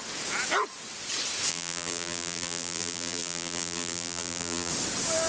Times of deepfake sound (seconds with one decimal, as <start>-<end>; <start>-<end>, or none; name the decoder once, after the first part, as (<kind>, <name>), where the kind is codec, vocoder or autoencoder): 1.5-4.7 (vocoder, BigVGAN v2)